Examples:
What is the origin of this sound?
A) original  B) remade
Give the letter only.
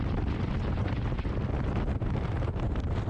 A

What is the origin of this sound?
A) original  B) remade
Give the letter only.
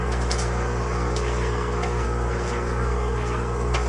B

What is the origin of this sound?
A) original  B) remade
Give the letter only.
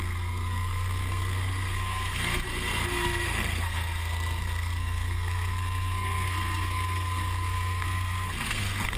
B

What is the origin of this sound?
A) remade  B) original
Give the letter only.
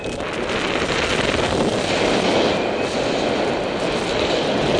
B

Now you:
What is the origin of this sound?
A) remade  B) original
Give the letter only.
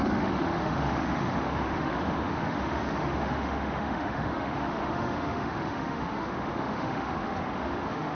A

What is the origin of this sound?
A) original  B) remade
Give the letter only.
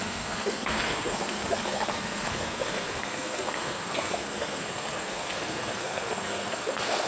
B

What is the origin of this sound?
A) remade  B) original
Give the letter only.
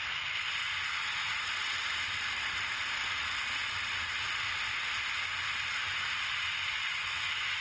B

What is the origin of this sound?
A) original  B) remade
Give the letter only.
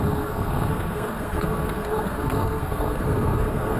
B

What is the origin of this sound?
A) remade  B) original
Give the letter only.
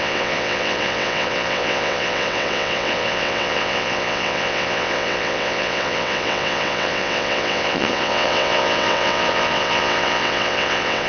A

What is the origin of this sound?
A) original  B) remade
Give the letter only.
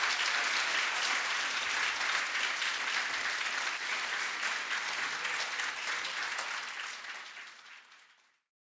A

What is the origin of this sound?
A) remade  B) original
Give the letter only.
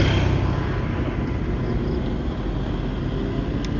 B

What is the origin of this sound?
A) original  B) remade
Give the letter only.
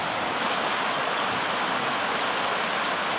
A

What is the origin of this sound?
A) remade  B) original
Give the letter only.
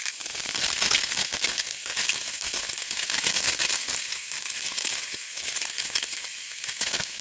A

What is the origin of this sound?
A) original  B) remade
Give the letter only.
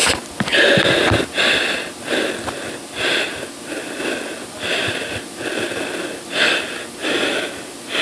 A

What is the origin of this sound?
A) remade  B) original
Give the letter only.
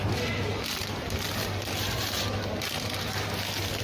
B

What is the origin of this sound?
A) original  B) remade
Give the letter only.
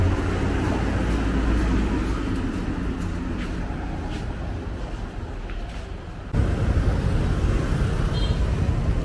A